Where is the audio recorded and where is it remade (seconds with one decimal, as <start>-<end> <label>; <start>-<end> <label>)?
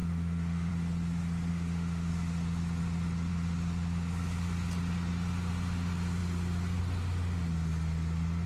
0.0-0.7 remade; 0.7-1.5 recorded; 1.5-2.1 remade; 2.1-8.5 recorded